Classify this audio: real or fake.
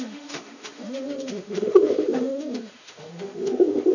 fake